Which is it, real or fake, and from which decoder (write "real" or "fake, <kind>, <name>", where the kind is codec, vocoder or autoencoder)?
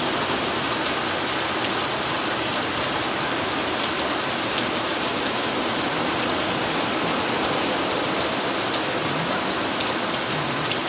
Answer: real